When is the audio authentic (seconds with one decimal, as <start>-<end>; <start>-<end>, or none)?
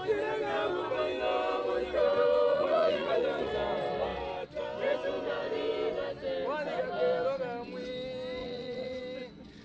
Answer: 0.0-2.5; 3.5-8.4; 9.0-9.6